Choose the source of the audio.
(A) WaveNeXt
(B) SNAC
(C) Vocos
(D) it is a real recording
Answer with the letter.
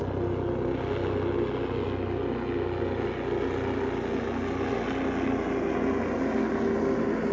D